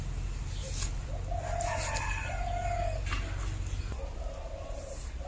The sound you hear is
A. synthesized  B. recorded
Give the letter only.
B